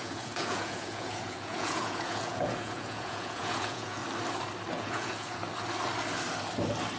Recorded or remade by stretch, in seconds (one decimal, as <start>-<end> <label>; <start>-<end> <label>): 0.0-4.0 remade; 4.0-4.7 recorded; 4.7-5.4 remade; 5.4-7.0 recorded